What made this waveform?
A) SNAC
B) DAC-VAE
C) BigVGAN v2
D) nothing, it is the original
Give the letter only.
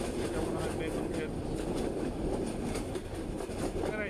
D